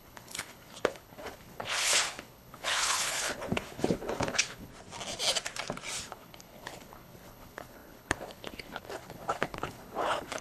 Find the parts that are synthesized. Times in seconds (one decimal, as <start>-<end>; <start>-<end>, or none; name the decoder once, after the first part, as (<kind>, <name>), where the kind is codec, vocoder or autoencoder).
0.0-4.7 (codec, HILCodec); 6.0-10.4